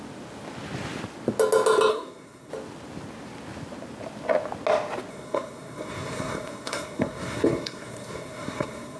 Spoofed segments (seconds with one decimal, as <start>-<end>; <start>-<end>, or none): 1.9-2.5; 5.1-9.0